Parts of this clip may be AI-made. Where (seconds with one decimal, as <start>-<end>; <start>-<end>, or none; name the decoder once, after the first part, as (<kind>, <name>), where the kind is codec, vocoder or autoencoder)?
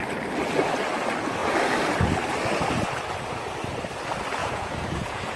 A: 4.4-5.4 (vocoder, Vocos)